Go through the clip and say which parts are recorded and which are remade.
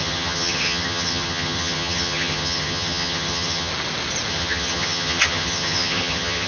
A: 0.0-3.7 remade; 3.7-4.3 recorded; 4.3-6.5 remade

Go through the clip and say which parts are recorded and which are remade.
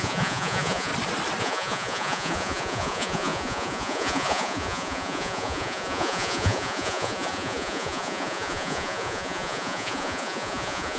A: 0.0-0.9 remade; 0.9-1.4 recorded; 1.4-11.0 remade